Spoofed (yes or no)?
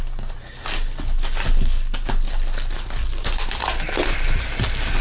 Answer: no